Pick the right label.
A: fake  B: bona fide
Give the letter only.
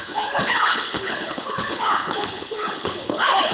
A